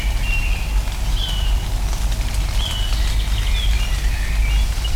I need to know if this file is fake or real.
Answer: real